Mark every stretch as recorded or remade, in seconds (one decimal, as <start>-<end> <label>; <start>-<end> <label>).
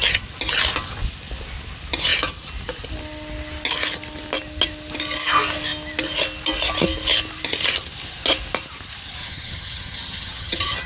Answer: 0.0-9.2 recorded; 9.2-10.9 remade